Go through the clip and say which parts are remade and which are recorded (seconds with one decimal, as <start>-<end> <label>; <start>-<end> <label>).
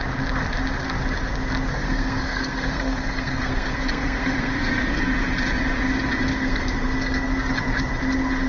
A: 0.0-1.7 recorded; 1.7-5.0 remade; 5.0-6.3 recorded; 6.3-7.3 remade; 7.3-8.5 recorded